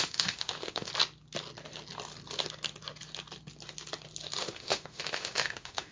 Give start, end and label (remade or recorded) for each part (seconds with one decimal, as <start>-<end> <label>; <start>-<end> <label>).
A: 0.0-0.9 remade; 0.9-4.4 recorded; 4.4-5.9 remade